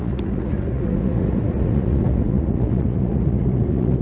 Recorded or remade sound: remade